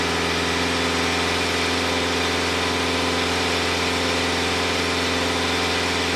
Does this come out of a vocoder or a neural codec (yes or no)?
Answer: no